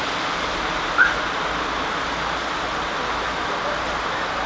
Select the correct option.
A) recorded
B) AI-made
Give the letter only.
A